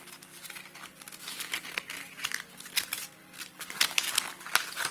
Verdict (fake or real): real